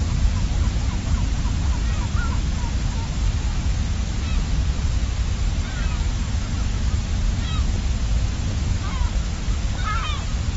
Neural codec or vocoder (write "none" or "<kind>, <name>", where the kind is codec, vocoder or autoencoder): none